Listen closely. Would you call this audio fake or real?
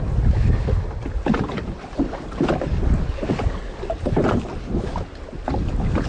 real